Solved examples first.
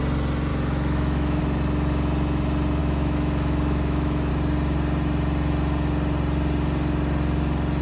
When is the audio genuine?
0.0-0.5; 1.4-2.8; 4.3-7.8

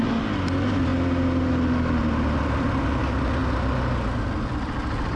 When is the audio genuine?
0.0-5.2

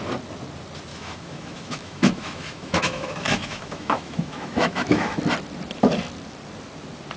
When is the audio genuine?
0.0-0.9; 5.2-7.2

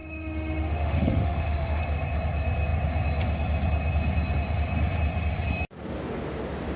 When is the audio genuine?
1.8-6.8